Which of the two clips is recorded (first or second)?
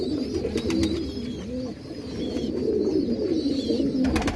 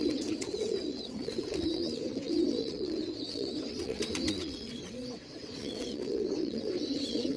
first